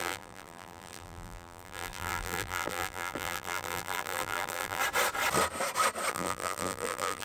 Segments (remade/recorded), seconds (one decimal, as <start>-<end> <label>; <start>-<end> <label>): 0.0-4.8 remade; 4.8-6.1 recorded; 6.1-7.2 remade